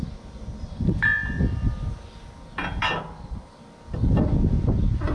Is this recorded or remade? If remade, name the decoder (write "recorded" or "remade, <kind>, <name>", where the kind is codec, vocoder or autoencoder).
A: recorded